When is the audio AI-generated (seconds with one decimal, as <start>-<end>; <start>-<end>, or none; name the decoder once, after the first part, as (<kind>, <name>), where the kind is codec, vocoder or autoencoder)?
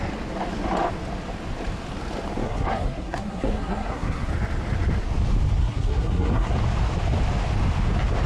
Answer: 2.4-4.3 (codec, SNAC); 5.6-6.5